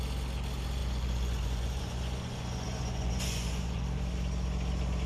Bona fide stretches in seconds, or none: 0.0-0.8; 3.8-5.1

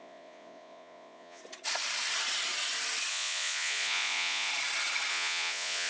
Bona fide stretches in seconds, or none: 1.4-3.1; 4.5-5.1

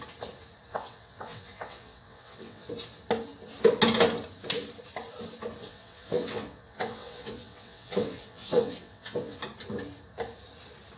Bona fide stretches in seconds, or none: 0.0-0.7; 2.7-5.6; 9.4-11.0

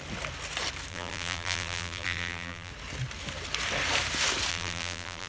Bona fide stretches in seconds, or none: 0.0-0.9; 2.7-4.5

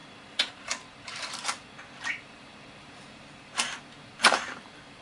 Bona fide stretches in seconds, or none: none

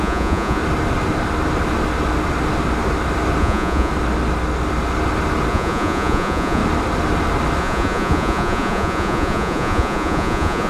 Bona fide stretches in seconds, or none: 0.6-3.4; 3.9-5.5; 6.6-7.6